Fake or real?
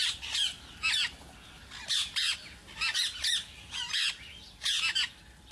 real